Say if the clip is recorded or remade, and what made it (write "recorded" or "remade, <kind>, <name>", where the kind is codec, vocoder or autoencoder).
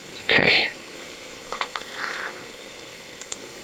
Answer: remade, codec, SNAC